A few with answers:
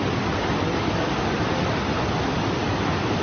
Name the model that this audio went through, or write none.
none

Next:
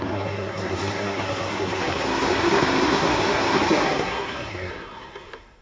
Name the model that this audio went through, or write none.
codec, SNAC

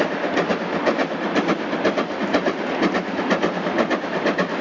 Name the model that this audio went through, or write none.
none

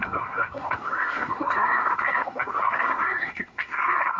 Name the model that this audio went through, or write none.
codec, SNAC